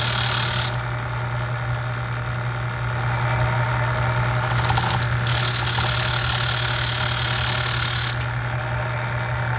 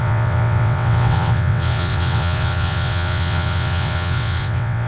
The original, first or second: first